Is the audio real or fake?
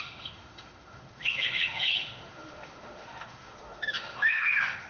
fake